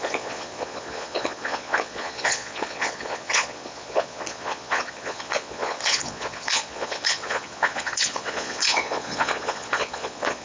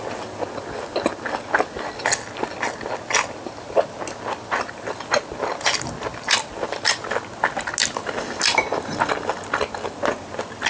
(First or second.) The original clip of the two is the second